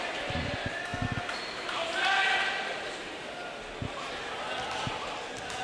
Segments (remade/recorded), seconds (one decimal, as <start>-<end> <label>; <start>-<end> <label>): 0.0-5.6 recorded